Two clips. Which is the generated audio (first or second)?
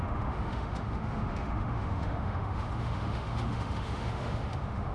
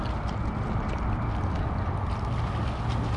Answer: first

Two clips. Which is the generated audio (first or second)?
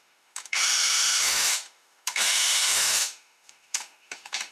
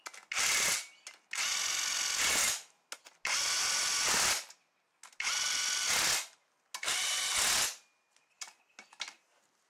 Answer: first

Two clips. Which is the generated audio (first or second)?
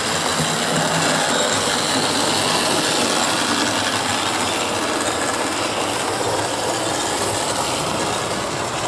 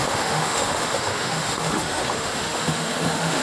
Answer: second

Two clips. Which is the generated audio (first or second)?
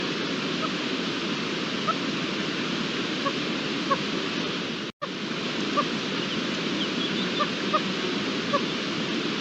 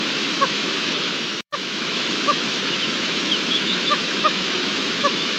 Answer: second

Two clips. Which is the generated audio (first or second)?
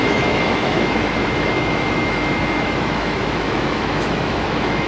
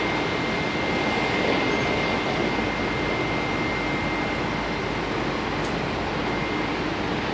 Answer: first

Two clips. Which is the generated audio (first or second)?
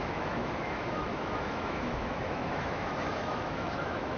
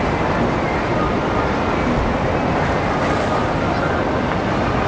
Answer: first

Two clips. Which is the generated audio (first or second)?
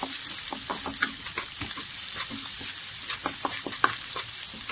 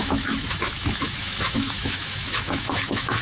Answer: second